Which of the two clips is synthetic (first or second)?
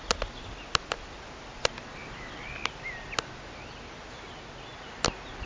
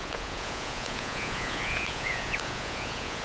second